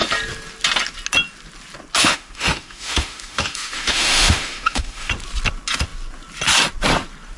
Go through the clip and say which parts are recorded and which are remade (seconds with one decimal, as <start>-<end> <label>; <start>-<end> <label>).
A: 0.0-2.0 recorded; 2.0-5.1 remade; 5.1-7.4 recorded

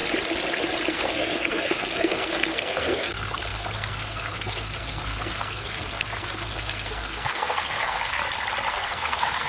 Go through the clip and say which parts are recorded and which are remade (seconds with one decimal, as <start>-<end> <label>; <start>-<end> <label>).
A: 0.0-0.9 recorded; 0.9-8.2 remade; 8.2-8.7 recorded; 8.7-9.5 remade

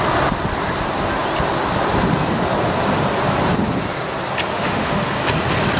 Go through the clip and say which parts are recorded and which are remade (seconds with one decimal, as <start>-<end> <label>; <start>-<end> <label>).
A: 0.0-4.5 recorded; 4.5-5.1 remade; 5.1-5.8 recorded